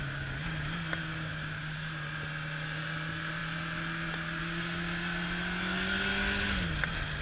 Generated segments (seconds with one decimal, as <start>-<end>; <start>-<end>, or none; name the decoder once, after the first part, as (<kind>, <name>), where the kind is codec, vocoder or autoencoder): none